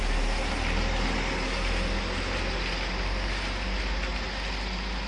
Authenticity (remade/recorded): recorded